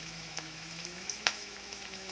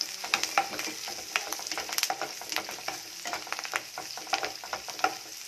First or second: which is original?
second